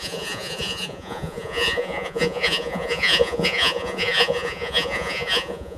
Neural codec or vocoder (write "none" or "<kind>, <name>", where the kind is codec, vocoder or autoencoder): vocoder, Vocos